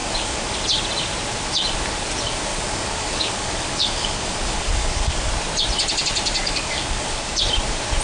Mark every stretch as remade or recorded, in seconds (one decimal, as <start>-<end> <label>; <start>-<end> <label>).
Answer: 0.0-0.6 remade; 0.6-2.5 recorded; 2.5-5.3 remade; 5.3-6.4 recorded; 6.4-7.4 remade; 7.4-8.0 recorded